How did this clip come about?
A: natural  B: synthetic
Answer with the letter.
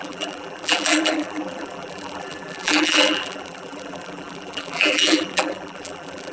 B